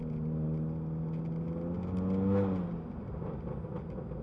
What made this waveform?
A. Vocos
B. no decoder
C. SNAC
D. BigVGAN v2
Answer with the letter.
B